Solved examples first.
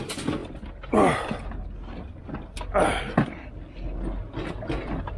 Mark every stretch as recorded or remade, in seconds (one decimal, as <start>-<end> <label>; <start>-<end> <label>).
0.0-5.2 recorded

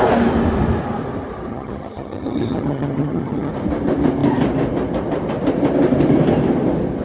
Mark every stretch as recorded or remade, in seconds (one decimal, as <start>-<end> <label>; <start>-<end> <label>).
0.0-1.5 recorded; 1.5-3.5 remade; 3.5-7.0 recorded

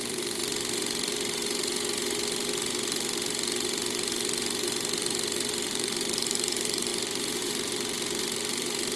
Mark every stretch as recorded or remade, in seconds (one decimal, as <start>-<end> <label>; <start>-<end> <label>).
0.0-0.4 remade; 0.4-5.5 recorded; 5.5-9.0 remade

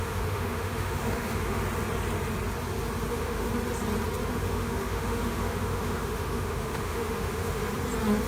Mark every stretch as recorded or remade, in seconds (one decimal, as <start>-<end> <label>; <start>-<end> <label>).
0.0-1.6 remade; 1.6-3.1 recorded; 3.1-3.5 remade; 3.5-4.3 recorded; 4.3-7.6 remade; 7.6-8.3 recorded

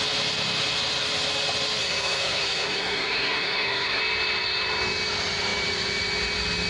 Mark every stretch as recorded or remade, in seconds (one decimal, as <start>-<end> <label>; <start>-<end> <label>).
0.0-1.8 recorded; 1.8-4.0 remade; 4.0-6.7 recorded

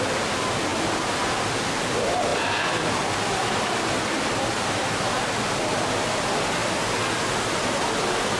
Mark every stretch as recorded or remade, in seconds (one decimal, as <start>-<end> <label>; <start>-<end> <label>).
0.0-0.7 recorded; 0.7-1.8 remade; 1.8-2.3 recorded; 2.3-5.9 remade; 5.9-8.4 recorded

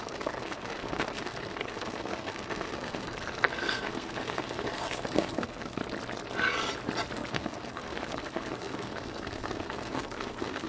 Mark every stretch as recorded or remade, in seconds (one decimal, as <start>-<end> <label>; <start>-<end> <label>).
0.0-5.8 remade; 5.8-7.3 recorded; 7.3-10.7 remade

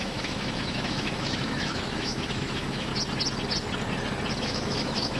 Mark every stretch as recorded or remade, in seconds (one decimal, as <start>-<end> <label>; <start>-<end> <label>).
0.0-2.9 remade; 2.9-4.4 recorded; 4.4-5.2 remade